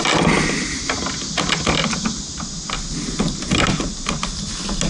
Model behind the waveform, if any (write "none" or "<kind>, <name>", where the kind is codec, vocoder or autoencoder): none